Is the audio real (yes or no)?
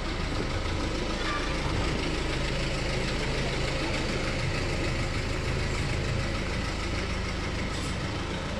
yes